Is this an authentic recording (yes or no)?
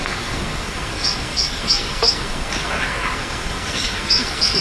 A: no